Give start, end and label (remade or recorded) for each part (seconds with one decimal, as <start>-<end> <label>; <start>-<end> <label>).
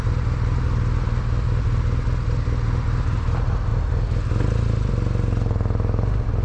0.0-6.4 recorded